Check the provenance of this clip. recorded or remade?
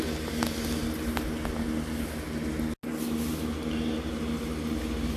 recorded